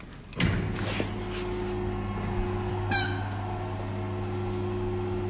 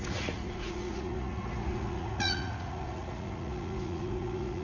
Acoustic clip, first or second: first